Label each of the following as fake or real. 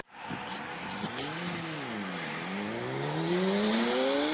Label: real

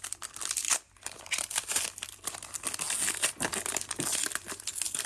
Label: real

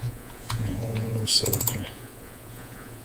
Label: fake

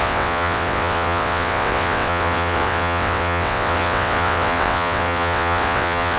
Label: fake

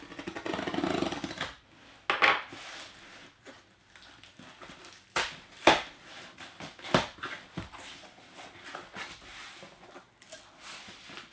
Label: real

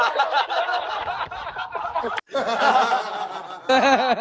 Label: real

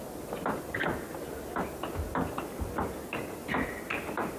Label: real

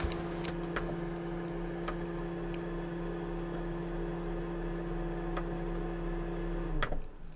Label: real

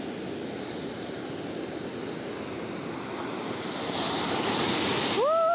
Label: real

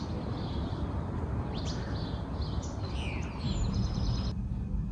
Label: real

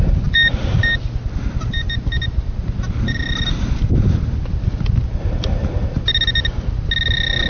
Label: real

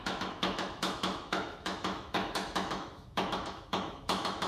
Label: fake